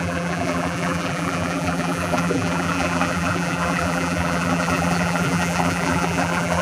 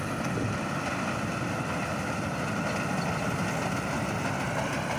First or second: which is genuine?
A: second